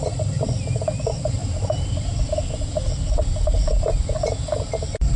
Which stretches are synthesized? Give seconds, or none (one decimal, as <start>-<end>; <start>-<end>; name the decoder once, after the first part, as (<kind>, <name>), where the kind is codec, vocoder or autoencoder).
none